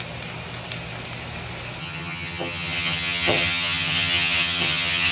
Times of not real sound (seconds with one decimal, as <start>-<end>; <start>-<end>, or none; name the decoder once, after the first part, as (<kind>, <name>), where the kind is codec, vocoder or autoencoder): 1.8-5.1 (vocoder, HiFi-GAN)